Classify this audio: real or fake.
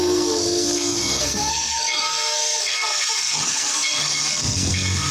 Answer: fake